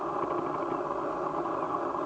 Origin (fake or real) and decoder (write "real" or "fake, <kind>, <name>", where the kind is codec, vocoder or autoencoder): real